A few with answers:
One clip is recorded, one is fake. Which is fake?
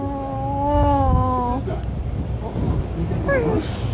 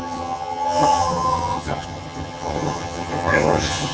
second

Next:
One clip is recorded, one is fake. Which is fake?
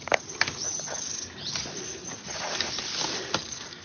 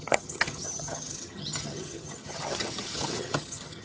second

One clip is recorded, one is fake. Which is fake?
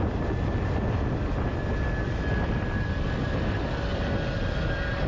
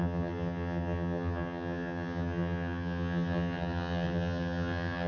second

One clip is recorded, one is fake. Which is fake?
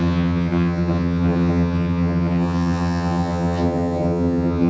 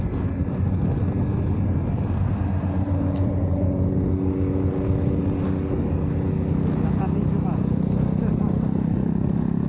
first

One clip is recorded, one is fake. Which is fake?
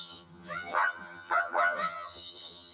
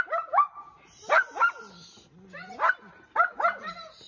first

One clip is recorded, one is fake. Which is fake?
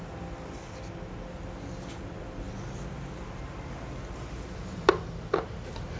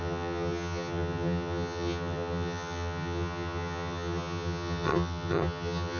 second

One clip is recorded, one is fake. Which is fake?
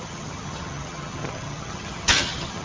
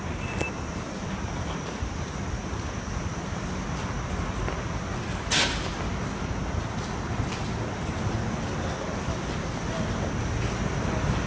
first